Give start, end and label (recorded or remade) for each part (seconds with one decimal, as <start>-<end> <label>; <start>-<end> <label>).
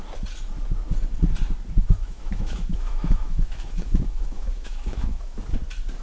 0.0-1.8 recorded; 1.8-5.4 remade; 5.4-6.0 recorded